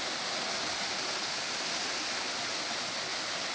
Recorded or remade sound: recorded